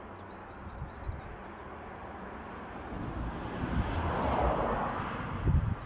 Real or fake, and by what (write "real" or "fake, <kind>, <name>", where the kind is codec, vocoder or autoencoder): real